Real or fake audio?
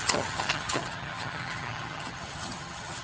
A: fake